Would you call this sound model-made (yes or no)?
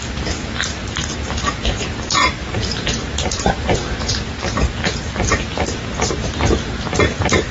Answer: yes